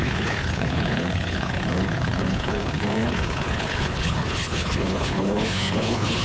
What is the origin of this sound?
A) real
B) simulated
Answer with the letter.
B